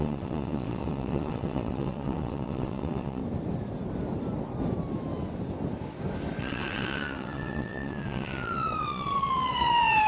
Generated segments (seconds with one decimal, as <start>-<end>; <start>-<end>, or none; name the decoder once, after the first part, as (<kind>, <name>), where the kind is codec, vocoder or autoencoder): 0.0-3.2 (vocoder, WaveNeXt); 6.4-10.1